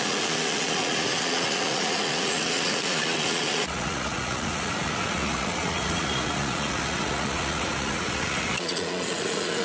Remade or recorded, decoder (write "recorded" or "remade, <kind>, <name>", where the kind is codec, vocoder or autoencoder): remade, vocoder, Vocos